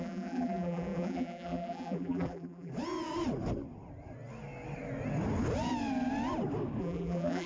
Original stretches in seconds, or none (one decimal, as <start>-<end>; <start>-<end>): 2.7-6.8